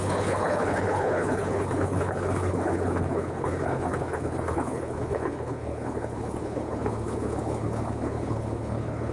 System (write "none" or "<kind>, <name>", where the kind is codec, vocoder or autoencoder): codec, HILCodec